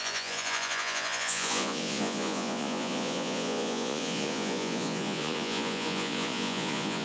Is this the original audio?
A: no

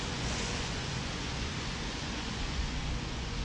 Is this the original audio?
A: no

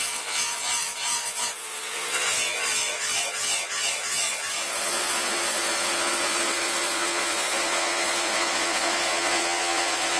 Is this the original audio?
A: no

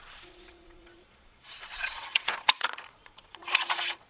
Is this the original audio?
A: no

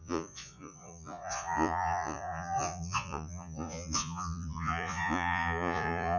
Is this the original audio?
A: no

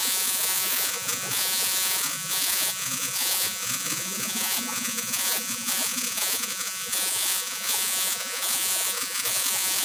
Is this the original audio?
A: no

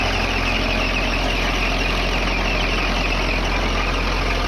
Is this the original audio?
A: yes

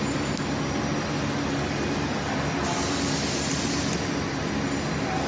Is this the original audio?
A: yes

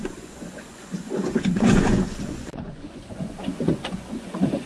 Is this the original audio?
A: no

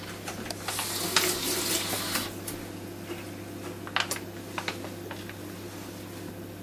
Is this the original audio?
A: yes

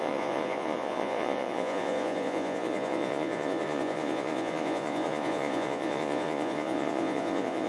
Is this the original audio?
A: no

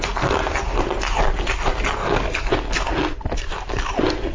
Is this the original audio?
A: yes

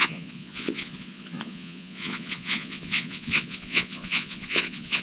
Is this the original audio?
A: no